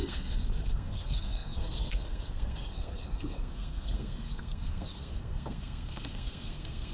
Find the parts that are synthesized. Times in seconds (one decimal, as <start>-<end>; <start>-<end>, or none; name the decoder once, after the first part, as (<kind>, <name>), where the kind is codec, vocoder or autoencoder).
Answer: 0.0-6.9 (codec, SNAC)